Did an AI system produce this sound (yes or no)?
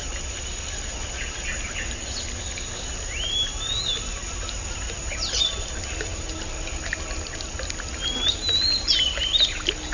no